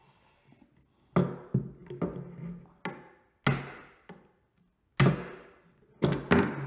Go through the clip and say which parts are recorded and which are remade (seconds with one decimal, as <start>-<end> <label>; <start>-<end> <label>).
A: 0.0-6.7 recorded